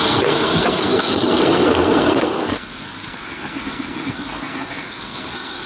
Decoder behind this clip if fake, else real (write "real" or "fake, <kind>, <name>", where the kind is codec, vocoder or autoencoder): fake, codec, SNAC